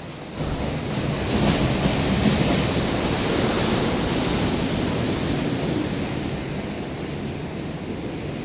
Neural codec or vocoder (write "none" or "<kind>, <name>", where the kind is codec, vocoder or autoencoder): none